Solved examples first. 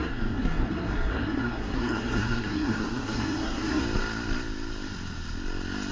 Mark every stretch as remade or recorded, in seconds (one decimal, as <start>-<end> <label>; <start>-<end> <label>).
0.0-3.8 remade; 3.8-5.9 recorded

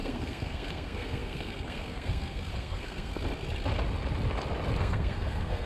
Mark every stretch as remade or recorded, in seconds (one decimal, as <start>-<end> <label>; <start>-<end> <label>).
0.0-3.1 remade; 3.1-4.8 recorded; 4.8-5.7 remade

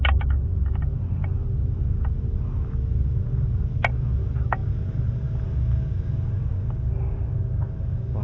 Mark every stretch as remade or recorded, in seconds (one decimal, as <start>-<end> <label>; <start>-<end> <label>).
0.0-8.2 recorded